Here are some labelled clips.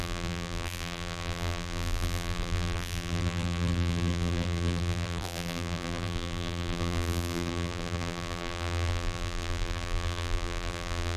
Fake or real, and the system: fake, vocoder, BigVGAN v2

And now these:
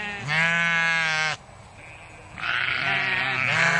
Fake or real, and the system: real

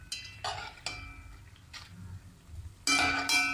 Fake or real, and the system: real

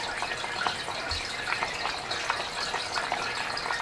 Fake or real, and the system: real